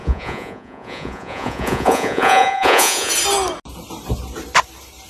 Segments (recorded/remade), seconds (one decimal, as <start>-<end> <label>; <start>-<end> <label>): 0.0-3.1 remade; 3.1-5.1 recorded